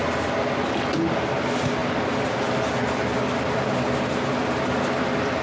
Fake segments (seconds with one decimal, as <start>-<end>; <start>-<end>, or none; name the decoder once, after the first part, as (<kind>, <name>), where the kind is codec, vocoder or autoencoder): none